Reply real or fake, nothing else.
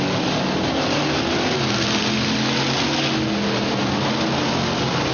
real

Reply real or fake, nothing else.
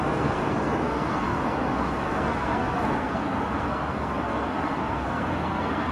fake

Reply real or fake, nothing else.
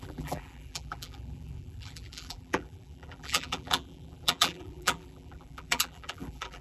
fake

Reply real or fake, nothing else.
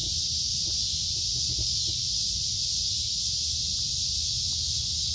real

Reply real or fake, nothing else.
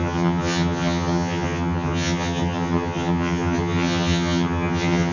fake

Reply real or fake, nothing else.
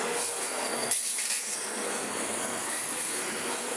fake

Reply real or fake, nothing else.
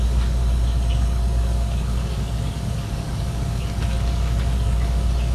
fake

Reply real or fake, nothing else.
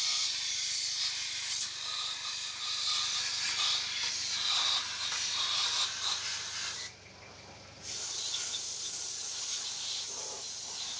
real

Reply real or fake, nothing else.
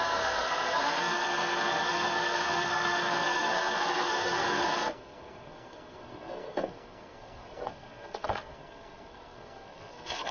fake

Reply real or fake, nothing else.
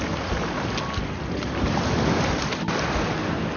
real